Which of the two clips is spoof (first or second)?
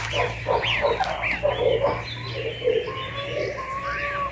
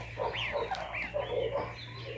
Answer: first